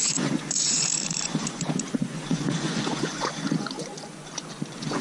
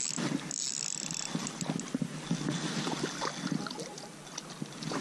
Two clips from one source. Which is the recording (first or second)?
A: second